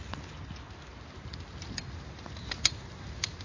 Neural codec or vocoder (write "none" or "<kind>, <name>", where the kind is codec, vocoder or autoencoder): none